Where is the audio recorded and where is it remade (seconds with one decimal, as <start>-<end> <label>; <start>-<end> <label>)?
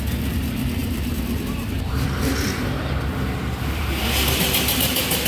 0.0-5.3 remade